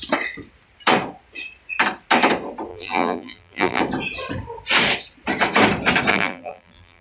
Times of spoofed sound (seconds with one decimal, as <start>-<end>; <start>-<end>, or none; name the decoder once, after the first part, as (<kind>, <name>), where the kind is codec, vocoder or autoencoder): 2.7-3.8 (vocoder, BigVGAN v2); 6.1-7.0